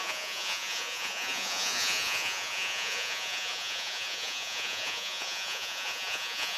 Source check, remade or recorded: remade